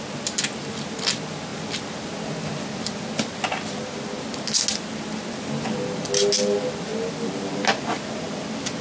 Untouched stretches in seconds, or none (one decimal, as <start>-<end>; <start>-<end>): 0.0-8.8